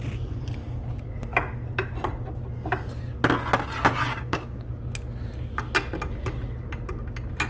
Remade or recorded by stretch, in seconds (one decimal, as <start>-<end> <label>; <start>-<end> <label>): 0.0-0.6 recorded; 0.6-1.1 remade; 1.1-4.1 recorded; 4.1-4.7 remade; 4.7-7.5 recorded